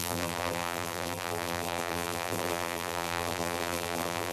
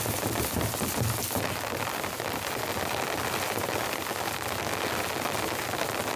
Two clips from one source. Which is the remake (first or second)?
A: first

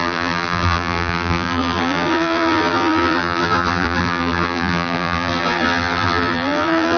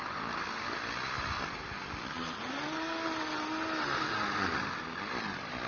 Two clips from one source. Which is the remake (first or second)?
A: first